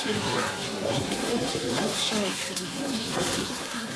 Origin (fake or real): fake